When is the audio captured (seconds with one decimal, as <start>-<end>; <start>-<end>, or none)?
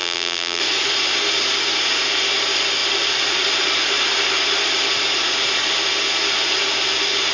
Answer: 0.6-7.3